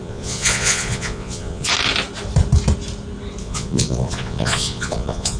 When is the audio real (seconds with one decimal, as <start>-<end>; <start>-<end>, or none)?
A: 1.7-3.4